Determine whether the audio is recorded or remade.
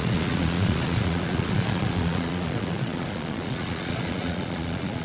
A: remade